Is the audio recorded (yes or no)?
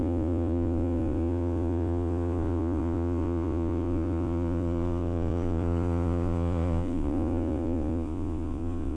no